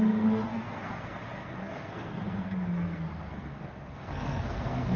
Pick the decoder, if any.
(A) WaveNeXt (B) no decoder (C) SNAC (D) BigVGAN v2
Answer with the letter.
C